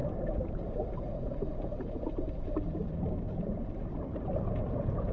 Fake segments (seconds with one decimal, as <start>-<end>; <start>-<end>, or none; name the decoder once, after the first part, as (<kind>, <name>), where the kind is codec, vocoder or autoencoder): 0.0-3.1 (vocoder, BigVGAN v2)